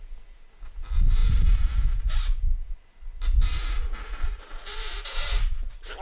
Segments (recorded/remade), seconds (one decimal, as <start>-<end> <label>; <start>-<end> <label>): 0.0-6.0 recorded